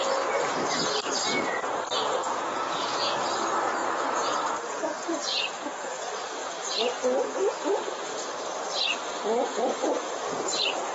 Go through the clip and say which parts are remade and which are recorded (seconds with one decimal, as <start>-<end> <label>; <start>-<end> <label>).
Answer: 0.0-2.2 recorded; 2.2-3.1 remade; 3.1-5.3 recorded; 5.3-6.0 remade; 6.0-10.9 recorded